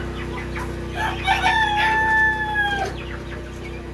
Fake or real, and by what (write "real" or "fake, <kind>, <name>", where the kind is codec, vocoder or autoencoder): real